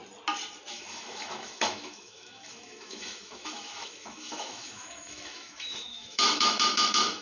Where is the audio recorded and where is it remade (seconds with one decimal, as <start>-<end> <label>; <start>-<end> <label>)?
0.0-0.7 recorded; 0.7-7.2 remade